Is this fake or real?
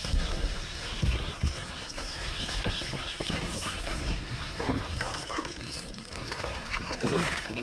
fake